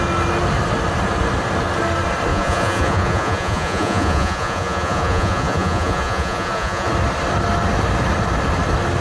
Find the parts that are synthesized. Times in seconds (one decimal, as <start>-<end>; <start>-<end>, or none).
2.3-6.9